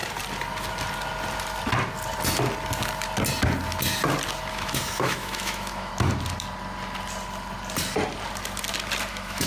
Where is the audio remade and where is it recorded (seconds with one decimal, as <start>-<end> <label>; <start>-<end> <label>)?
0.0-4.5 recorded; 4.5-5.9 remade; 5.9-9.1 recorded; 9.1-9.5 remade